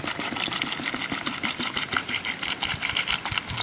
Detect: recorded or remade remade